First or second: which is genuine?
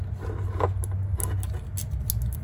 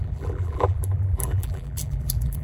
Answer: first